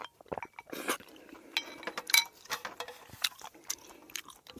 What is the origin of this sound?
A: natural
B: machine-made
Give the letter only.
A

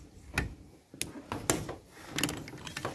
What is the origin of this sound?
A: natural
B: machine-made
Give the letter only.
A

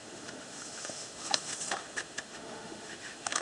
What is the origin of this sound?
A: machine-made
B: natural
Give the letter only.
A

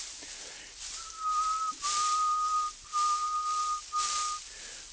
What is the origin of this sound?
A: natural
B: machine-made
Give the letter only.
A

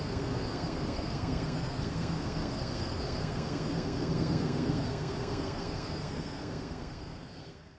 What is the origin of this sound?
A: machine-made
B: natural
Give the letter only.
A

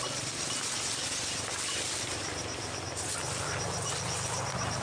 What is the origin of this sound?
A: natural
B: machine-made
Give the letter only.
A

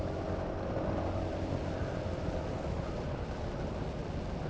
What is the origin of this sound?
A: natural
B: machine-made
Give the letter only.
A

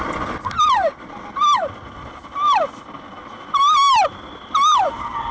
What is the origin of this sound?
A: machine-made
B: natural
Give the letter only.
B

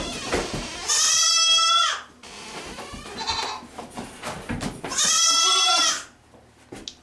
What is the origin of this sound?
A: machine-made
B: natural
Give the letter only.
B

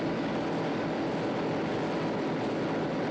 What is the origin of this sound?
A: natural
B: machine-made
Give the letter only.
A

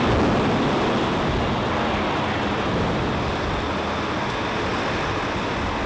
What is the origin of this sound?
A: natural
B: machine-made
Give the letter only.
A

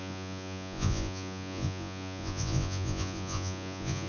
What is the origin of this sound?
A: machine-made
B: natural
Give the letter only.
A